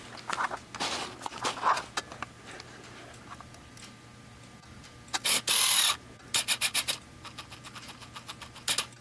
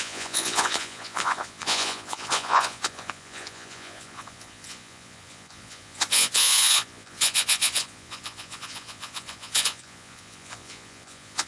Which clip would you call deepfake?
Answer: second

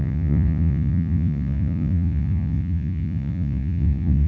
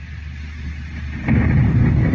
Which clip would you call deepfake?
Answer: first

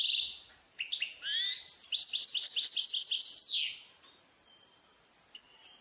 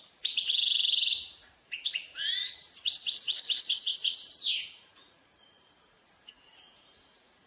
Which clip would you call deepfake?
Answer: second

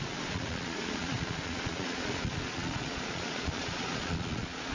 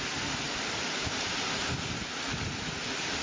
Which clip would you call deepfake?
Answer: first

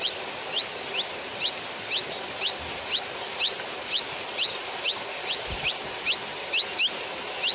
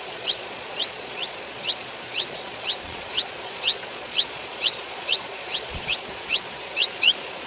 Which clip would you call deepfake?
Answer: second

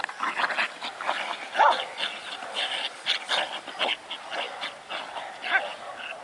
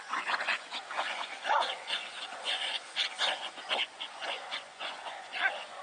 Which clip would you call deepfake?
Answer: second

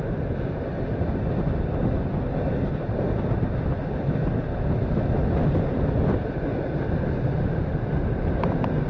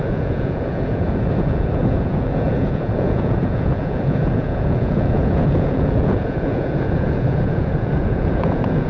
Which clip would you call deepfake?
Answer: second